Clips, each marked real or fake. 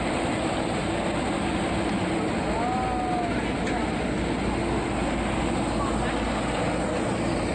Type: real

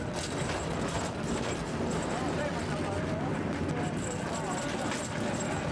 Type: real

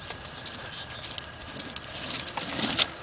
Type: real